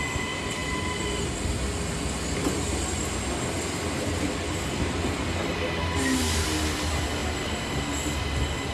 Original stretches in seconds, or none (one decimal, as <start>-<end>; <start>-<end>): 0.0-8.7